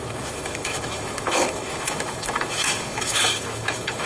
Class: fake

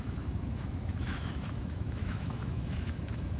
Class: fake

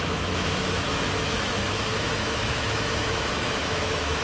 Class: fake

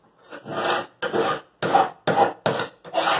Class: real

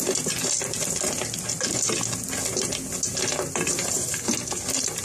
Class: real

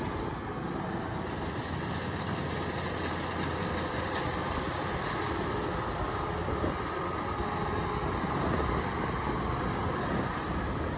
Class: real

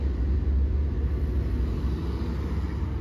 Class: real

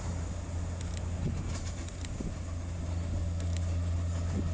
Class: real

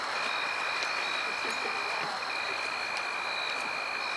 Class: real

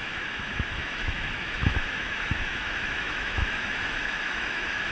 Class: fake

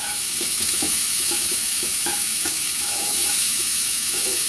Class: fake